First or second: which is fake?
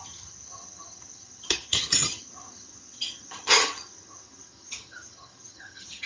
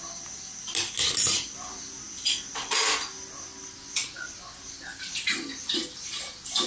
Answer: first